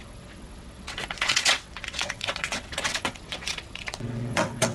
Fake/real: fake